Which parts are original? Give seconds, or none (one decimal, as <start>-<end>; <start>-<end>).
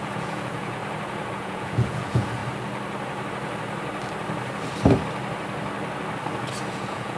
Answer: 0.8-1.3; 2.4-6.7